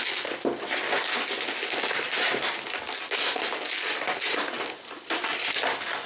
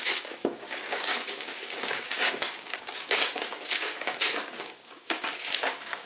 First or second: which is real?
first